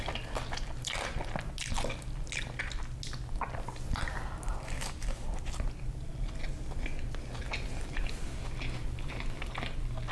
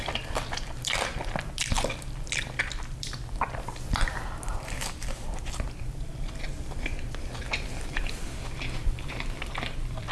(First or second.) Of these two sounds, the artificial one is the second